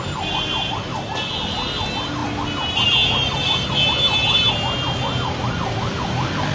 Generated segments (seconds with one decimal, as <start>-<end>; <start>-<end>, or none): none